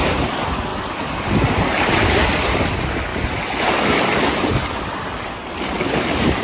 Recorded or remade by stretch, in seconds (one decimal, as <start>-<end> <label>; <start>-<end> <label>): 0.0-0.7 remade; 0.7-1.5 recorded; 1.5-3.1 remade; 3.1-4.8 recorded; 4.8-6.4 remade